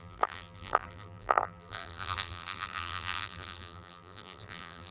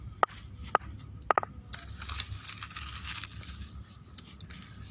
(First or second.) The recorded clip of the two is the second